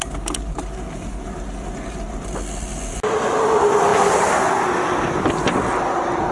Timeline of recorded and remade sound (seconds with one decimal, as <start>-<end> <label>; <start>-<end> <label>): 0.0-6.3 recorded